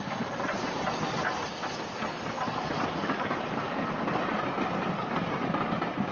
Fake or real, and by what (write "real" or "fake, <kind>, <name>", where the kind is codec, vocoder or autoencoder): fake, vocoder, BigVGAN v2